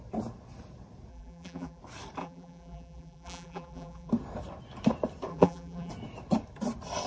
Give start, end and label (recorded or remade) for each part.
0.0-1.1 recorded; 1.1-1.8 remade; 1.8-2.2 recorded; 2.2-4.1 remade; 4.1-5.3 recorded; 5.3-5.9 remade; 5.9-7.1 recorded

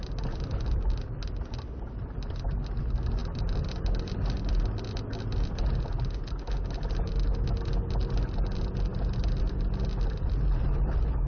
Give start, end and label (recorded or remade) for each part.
0.0-11.3 recorded

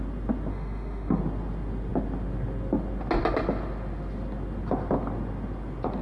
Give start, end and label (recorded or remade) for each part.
0.0-0.5 recorded; 0.5-1.2 remade; 1.2-6.0 recorded

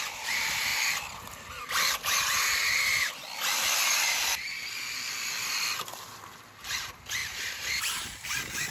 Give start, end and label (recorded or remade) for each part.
0.0-0.7 remade; 0.7-2.0 recorded; 2.0-3.2 remade; 3.2-6.8 recorded; 6.8-8.7 remade

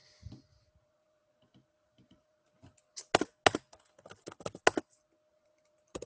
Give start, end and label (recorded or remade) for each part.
0.0-0.5 recorded; 0.5-2.7 remade; 2.7-5.3 recorded; 5.3-6.1 remade

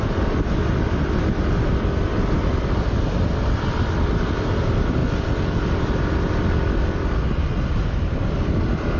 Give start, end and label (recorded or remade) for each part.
0.0-9.0 recorded